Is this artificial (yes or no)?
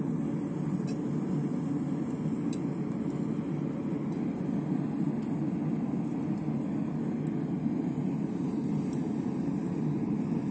no